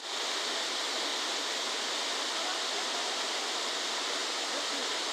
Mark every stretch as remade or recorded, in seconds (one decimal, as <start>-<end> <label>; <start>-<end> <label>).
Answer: 0.0-1.1 recorded; 1.1-1.9 remade; 1.9-5.1 recorded